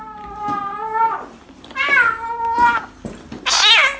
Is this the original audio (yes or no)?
yes